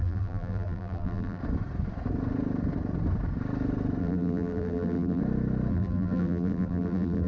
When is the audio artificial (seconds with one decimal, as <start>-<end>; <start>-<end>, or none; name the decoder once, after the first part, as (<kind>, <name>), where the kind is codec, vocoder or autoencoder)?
0.0-1.4 (vocoder, BigVGAN v2); 4.0-5.2; 5.7-7.3